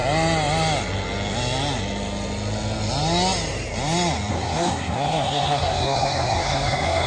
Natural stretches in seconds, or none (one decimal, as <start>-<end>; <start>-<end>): 0.0-4.3

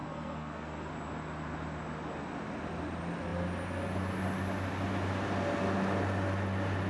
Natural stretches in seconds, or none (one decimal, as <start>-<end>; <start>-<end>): 0.9-6.9